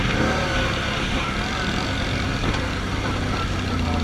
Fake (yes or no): no